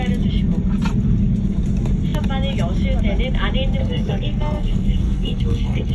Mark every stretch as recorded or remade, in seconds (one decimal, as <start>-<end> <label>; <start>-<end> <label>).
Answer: 0.0-3.8 recorded; 3.8-5.9 remade